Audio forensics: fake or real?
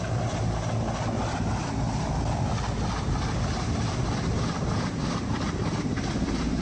real